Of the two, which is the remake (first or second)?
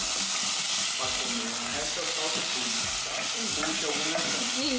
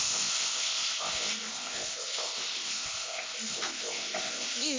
second